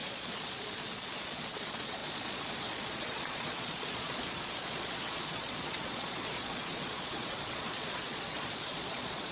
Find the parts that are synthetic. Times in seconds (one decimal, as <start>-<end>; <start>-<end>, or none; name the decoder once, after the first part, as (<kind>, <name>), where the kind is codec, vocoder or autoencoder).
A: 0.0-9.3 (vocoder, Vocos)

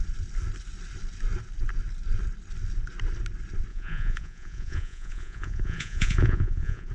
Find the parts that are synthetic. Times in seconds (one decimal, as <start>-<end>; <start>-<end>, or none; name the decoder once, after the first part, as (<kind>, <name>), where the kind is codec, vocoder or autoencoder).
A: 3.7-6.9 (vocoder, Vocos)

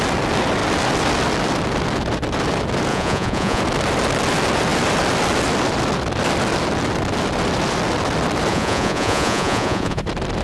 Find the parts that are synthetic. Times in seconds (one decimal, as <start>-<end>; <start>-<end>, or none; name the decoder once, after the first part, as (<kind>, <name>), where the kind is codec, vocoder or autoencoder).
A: 2.9-3.6 (vocoder, Vocos); 8.5-10.0

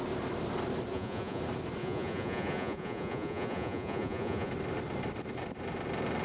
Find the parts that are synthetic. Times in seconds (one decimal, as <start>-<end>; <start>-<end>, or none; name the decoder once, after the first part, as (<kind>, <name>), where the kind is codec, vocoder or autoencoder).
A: 0.9-1.4 (vocoder, Vocos); 1.8-4.5

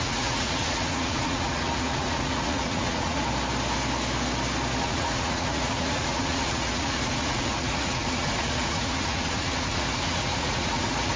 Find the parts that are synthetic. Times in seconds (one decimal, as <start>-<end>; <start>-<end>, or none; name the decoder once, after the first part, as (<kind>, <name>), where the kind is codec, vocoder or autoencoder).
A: 0.0-3.2 (vocoder, Vocos); 4.8-11.2

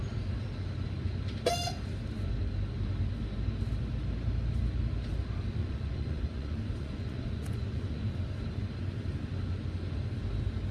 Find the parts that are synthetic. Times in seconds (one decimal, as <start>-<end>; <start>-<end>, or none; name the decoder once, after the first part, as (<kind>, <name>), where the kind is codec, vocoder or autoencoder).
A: 5.6-8.2 (vocoder, Vocos)